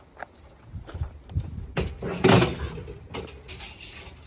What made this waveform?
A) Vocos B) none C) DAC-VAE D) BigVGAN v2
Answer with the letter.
B